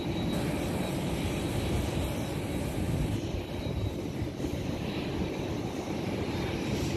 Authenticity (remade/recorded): recorded